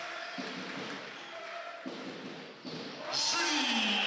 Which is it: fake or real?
real